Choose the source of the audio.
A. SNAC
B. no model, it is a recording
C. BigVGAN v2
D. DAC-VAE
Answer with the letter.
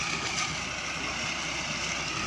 B